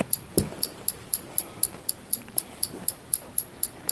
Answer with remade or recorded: remade